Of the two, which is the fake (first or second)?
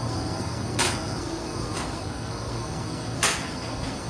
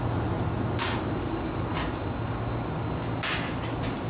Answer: first